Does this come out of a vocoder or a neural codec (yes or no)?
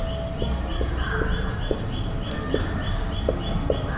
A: no